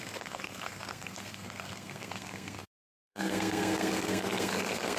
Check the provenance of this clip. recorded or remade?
remade